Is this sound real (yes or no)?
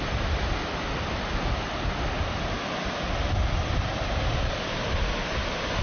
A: yes